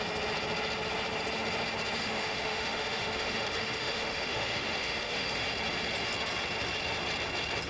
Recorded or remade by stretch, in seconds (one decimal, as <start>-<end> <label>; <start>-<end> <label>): 0.0-2.0 recorded; 2.0-5.4 remade; 5.4-7.7 recorded